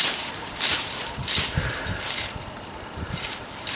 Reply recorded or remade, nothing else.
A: recorded